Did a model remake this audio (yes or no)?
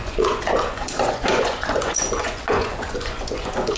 yes